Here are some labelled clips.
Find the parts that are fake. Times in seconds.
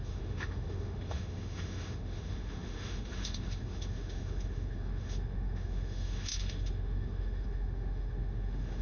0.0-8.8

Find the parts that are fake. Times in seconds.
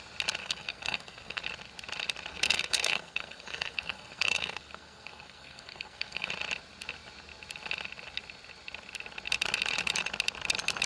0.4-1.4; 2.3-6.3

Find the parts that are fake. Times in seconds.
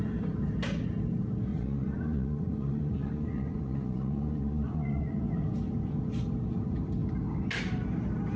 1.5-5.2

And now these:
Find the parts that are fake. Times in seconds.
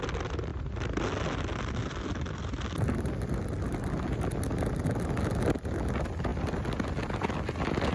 none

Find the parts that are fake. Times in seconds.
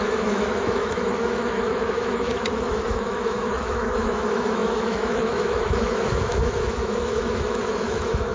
0.0-8.3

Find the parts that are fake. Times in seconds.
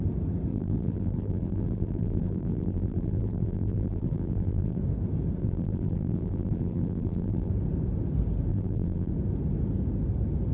0.5-4.8; 5.4-7.5; 8.5-9.1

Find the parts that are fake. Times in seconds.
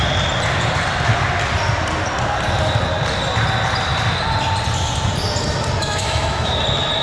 5.8-6.5